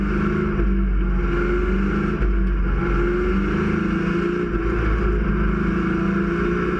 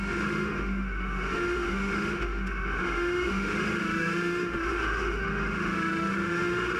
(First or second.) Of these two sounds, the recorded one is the first